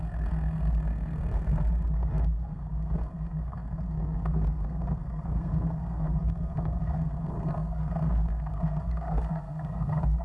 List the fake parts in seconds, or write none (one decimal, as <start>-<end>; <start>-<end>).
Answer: 0.0-10.2